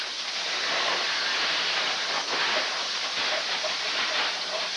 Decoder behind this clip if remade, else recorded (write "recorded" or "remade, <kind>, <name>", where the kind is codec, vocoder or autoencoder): recorded